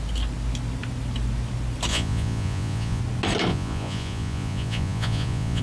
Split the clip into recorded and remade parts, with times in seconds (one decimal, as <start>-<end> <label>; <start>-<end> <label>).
0.0-1.9 recorded; 1.9-3.0 remade; 3.0-3.5 recorded; 3.5-5.6 remade